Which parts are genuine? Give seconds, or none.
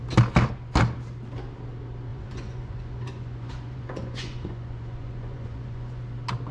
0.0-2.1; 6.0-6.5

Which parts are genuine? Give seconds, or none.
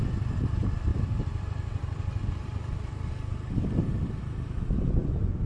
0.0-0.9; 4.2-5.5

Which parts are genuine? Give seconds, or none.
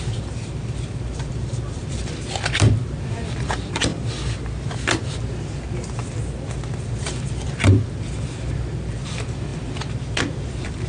3.9-6.8